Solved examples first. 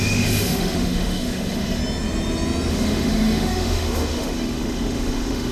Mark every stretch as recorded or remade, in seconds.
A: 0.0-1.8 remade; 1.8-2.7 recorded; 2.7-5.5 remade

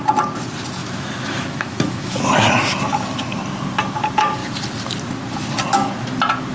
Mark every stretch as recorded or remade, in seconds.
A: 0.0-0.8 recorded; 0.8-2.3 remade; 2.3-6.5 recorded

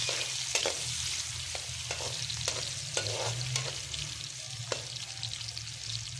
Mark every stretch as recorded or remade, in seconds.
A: 0.0-6.2 recorded